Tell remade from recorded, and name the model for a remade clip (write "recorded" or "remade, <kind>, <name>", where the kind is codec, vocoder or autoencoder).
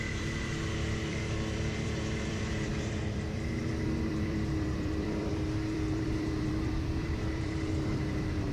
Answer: remade, vocoder, BigVGAN v2